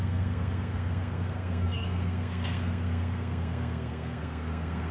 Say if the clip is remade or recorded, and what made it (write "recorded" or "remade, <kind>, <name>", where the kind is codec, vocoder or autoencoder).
remade, codec, SNAC